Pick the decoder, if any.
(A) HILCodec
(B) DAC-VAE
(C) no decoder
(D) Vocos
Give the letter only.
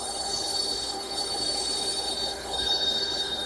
A